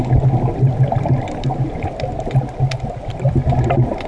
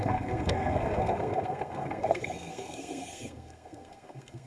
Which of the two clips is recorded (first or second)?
first